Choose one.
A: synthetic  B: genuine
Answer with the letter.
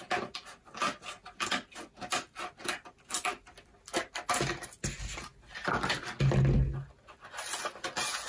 B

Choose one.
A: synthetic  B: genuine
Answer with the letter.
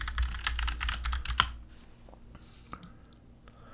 B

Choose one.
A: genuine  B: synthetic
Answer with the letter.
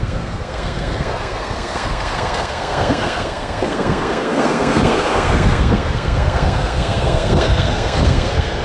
B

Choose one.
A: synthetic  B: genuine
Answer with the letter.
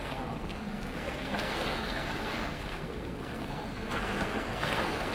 A